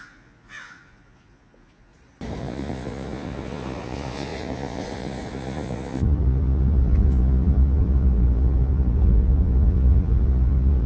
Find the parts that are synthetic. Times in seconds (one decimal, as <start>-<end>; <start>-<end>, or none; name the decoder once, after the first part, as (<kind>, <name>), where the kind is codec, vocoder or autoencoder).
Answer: 0.0-1.9 (vocoder, Vocos); 2.4-10.9